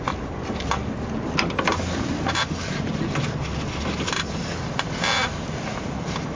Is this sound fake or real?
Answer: real